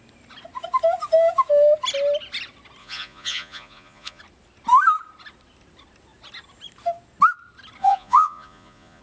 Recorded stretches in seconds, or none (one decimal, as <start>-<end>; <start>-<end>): 0.0-2.8; 4.2-7.8